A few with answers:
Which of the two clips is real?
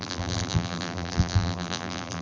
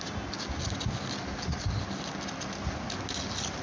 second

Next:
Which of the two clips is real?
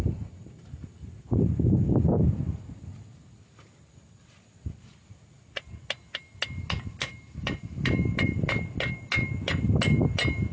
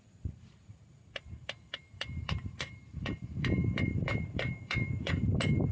first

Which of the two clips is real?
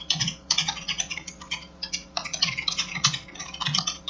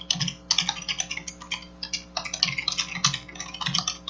second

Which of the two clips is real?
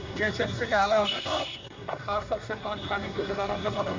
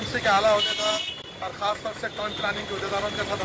second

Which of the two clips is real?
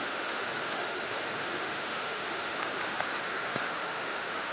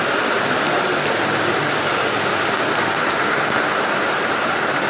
second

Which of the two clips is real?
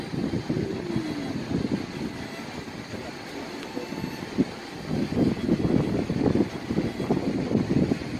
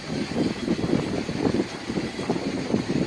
first